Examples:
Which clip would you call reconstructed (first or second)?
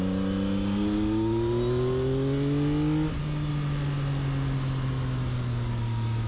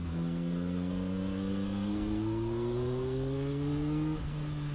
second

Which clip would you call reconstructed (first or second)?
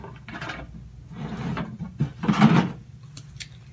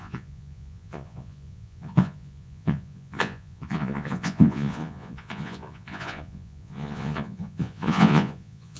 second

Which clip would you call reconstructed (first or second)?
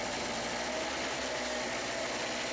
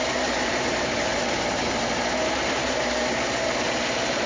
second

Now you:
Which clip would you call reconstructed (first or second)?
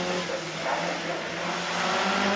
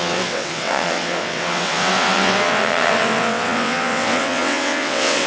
second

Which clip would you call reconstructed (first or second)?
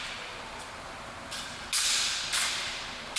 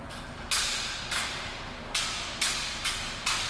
first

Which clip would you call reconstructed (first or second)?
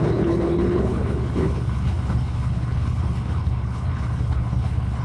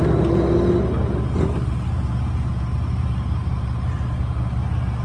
first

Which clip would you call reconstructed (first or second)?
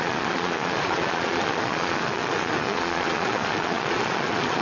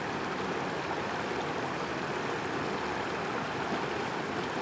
first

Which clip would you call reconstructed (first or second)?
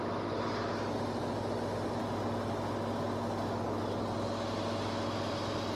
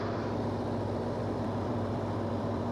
second